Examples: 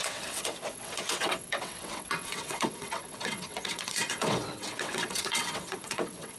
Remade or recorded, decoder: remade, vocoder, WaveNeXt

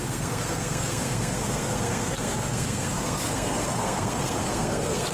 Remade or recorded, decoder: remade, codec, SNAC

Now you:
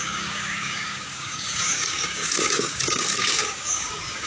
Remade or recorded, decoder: remade, codec, DAC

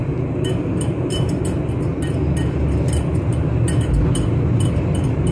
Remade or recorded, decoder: recorded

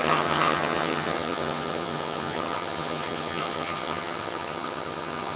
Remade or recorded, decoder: remade, vocoder, HiFi-GAN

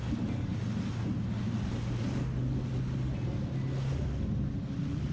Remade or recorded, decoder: recorded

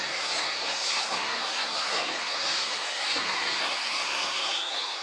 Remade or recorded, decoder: remade, codec, SNAC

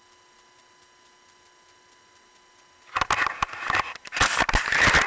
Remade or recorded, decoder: recorded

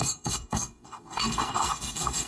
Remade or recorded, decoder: remade, codec, SNAC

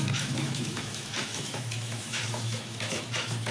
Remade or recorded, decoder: remade, autoencoder, DAC-VAE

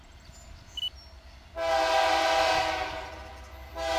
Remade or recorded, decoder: recorded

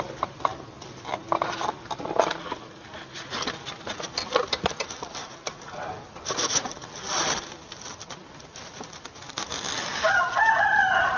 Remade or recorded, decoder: recorded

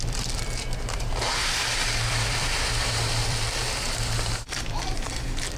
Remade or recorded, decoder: remade, vocoder, BigVGAN v2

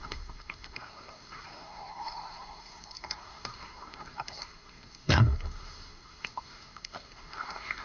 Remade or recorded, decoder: remade, codec, SNAC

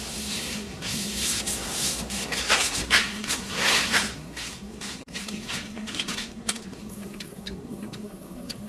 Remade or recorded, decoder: remade, codec, SNAC